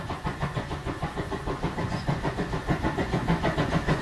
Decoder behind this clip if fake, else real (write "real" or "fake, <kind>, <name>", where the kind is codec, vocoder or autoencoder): fake, vocoder, Vocos